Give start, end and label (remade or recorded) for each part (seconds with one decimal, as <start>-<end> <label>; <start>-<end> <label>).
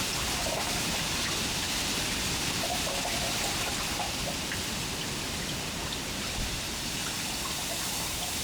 0.0-2.7 remade; 2.7-6.3 recorded; 6.3-7.0 remade; 7.0-7.8 recorded; 7.8-8.4 remade